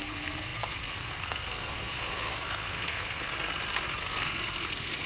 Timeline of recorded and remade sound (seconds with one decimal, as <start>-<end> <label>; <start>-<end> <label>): 0.0-3.3 remade; 3.3-4.0 recorded; 4.0-5.1 remade